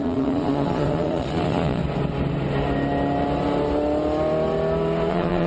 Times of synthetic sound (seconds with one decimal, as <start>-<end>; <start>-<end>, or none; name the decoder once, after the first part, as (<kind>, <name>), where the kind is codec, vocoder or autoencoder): 0.0-1.8 (vocoder, Vocos); 5.1-5.5